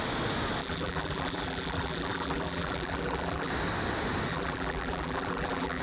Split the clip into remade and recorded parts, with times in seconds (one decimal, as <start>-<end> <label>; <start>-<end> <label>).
0.0-0.6 recorded; 0.6-3.5 remade; 3.5-4.3 recorded; 4.3-5.8 remade